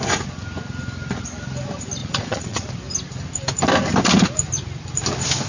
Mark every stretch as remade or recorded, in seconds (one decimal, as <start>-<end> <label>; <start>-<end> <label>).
0.0-2.0 recorded; 2.0-2.7 remade; 2.7-5.5 recorded